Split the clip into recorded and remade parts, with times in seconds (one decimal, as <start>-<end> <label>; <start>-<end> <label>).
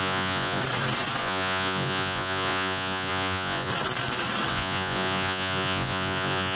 0.0-0.6 remade; 0.6-1.2 recorded; 1.2-3.7 remade; 3.7-4.5 recorded; 4.5-6.6 remade